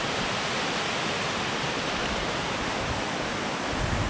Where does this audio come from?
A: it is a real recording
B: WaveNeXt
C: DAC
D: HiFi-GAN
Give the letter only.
A